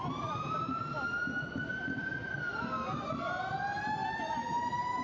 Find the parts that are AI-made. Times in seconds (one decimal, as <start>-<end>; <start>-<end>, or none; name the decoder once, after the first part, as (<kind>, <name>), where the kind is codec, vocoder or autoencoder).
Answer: 4.0-4.6 (vocoder, BigVGAN v2)